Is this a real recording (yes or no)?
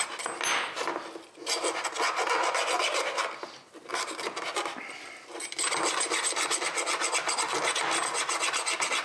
yes